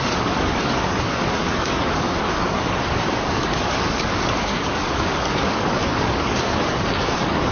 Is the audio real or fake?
fake